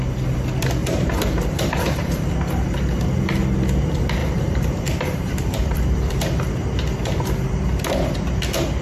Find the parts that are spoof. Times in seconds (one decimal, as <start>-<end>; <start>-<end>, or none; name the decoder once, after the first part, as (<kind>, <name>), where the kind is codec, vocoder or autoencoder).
0.8-2.3 (vocoder, BigVGAN v2); 4.2-6.1